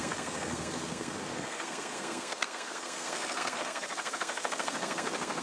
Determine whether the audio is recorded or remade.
remade